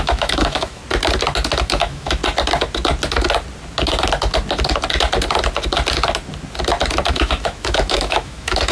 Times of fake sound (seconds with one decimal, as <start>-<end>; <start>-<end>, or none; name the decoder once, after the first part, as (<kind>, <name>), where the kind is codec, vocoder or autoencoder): 0.0-0.8 (autoencoder, DAC-VAE); 1.6-2.2; 7.1-8.7